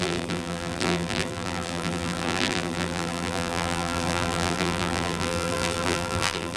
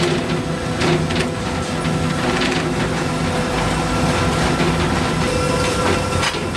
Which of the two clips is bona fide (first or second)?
second